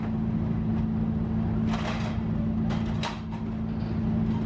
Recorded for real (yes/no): yes